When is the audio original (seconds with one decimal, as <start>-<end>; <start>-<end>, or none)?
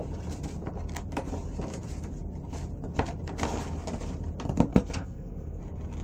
0.0-4.7; 5.6-6.0